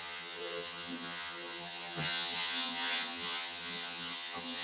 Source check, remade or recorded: remade